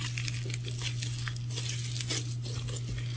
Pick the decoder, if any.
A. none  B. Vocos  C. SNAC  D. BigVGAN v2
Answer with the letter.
A